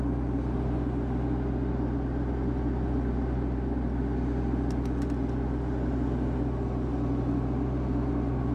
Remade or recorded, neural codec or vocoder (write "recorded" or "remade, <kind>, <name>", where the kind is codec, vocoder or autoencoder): recorded